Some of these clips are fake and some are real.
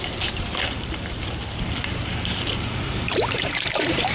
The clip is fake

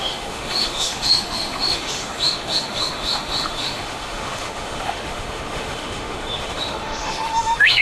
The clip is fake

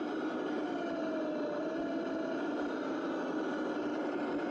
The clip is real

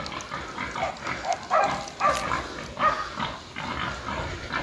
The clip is real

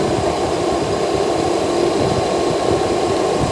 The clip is fake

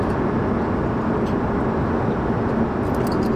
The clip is real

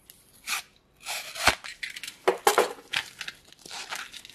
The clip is real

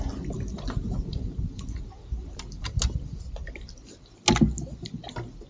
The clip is real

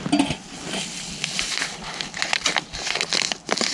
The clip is real